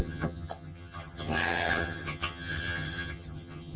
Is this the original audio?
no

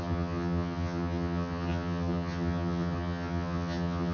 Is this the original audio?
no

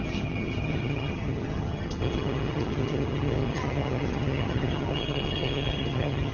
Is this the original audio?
no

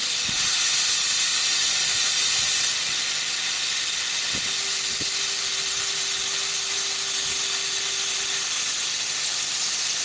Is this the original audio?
yes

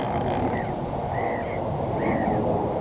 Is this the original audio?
yes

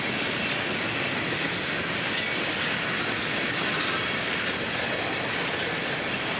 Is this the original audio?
yes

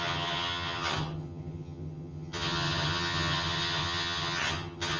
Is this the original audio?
no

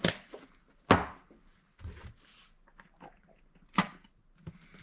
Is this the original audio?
yes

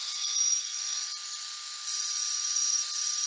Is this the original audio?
yes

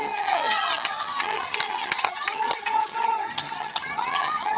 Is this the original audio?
no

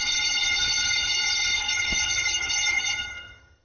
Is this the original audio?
no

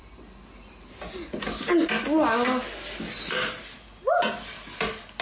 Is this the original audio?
yes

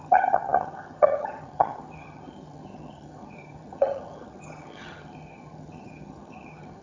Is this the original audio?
no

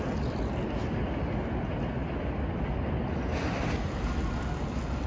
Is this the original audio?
yes